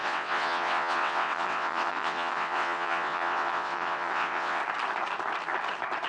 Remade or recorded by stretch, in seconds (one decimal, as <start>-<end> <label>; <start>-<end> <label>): 0.0-4.6 remade; 4.6-6.1 recorded